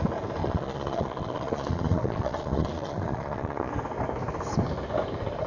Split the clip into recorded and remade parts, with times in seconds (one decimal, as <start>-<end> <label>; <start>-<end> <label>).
0.0-0.4 recorded; 0.4-3.7 remade; 3.7-5.5 recorded